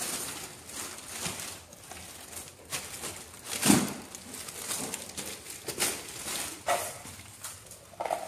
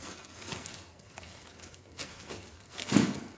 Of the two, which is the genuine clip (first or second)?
first